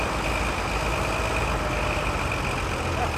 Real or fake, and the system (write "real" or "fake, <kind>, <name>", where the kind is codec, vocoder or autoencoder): real